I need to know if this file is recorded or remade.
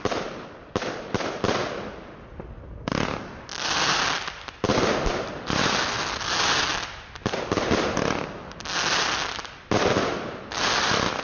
recorded